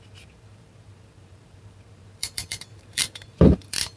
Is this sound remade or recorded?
remade